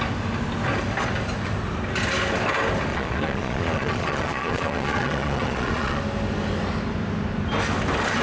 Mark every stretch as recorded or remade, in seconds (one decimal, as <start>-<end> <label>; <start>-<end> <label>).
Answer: 0.0-2.9 recorded; 2.9-6.0 remade; 6.0-8.2 recorded